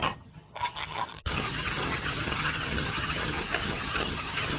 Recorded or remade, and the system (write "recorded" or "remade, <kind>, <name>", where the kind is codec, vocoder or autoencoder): remade, vocoder, HiFi-GAN